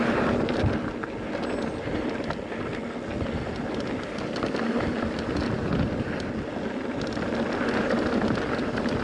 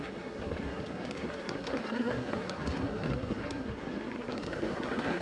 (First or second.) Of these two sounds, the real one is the first